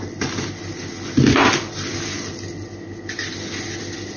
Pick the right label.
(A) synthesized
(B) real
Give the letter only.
B